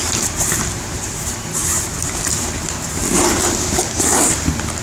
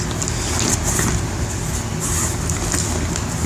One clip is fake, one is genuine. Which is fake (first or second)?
first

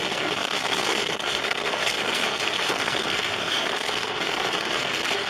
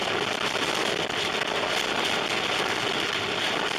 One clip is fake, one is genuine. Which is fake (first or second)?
first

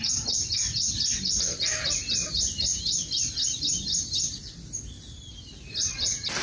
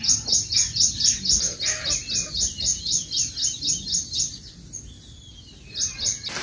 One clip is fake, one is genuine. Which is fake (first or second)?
first